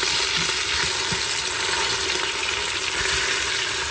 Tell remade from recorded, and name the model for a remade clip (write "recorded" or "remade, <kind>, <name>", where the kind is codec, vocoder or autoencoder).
recorded